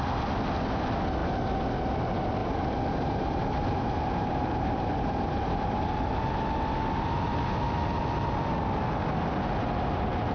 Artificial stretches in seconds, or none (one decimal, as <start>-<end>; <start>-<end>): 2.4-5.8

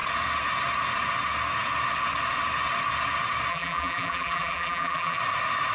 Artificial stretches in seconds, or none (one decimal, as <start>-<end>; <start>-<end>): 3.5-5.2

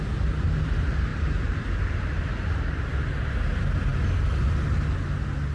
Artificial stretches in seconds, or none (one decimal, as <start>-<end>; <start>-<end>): 1.1-2.3

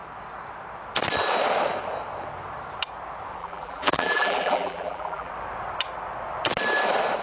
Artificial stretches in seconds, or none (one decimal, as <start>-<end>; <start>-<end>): 3.4-5.3

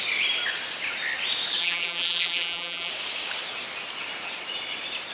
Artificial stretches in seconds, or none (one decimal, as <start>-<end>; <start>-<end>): 1.6-2.9

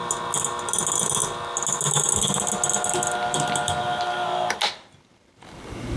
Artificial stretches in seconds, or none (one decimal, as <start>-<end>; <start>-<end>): none

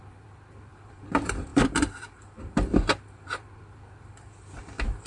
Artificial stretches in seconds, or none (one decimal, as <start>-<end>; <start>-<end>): 0.0-5.1

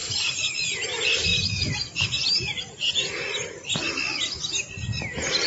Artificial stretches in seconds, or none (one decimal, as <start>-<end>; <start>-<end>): 0.0-0.5; 1.3-3.1